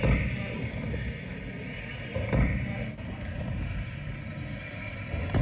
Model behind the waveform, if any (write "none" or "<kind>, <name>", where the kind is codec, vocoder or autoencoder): none